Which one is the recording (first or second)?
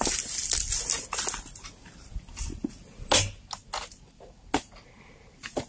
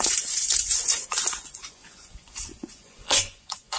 first